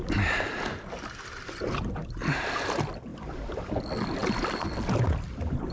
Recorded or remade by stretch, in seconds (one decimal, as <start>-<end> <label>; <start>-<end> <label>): 0.0-3.1 recorded; 3.1-3.7 remade; 3.7-4.2 recorded; 4.2-5.7 remade